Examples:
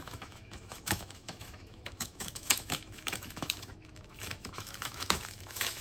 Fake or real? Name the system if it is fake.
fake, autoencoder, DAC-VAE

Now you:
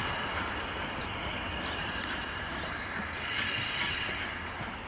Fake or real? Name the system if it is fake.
real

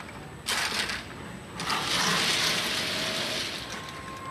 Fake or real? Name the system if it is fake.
real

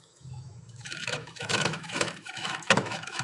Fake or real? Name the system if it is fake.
fake, autoencoder, DAC-VAE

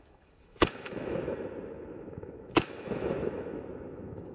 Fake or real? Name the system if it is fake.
fake, autoencoder, DAC-VAE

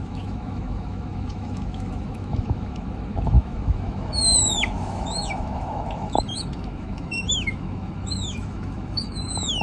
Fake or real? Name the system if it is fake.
fake, autoencoder, DAC-VAE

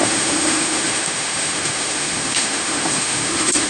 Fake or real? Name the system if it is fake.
fake, autoencoder, DAC-VAE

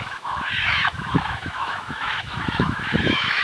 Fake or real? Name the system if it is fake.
fake, autoencoder, DAC-VAE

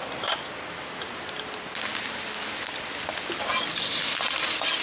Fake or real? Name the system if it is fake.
real